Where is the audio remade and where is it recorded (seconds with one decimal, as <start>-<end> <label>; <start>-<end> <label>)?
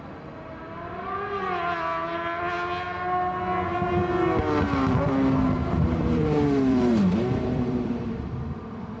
0.0-5.6 recorded; 5.6-8.3 remade; 8.3-9.0 recorded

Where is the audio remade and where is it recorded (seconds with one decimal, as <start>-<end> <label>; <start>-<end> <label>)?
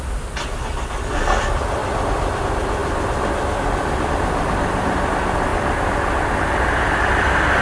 0.0-7.6 recorded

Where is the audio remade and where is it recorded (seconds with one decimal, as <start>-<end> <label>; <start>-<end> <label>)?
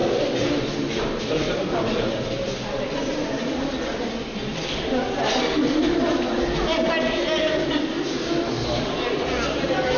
0.0-2.8 remade; 2.8-10.0 recorded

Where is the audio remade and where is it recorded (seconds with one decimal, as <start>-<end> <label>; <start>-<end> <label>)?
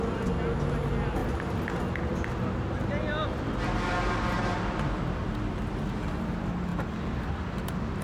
0.0-8.0 recorded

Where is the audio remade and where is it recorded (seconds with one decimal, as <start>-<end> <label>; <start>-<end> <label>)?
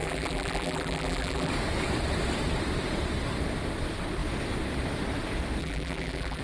0.0-1.5 remade; 1.5-5.6 recorded; 5.6-6.4 remade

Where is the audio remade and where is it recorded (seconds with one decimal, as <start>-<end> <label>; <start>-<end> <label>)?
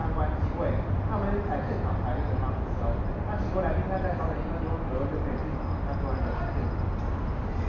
0.0-7.7 recorded